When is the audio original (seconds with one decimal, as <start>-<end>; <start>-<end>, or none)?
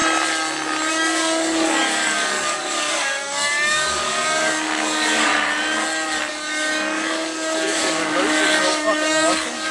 0.0-0.9; 5.3-6.3